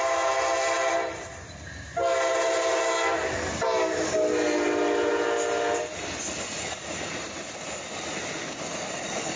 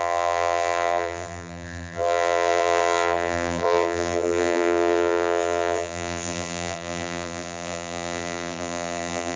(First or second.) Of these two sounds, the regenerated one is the second